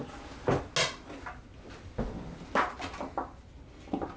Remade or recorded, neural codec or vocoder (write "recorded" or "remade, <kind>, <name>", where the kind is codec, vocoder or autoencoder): recorded